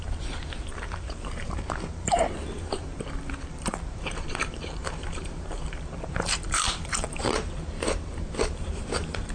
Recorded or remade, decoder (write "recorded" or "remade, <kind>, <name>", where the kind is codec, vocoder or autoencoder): remade, vocoder, BigVGAN v2